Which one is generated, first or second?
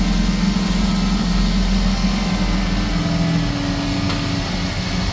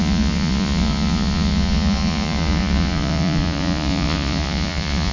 second